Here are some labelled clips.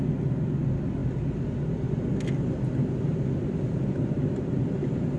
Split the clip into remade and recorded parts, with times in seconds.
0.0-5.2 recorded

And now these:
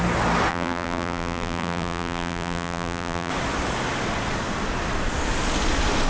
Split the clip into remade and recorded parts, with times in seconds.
0.0-0.5 recorded; 0.5-3.3 remade; 3.3-6.1 recorded

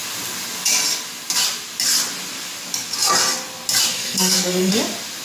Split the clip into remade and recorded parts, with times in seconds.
0.0-3.9 recorded; 3.9-4.7 remade; 4.7-5.2 recorded